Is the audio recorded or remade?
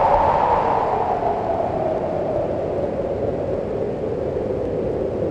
recorded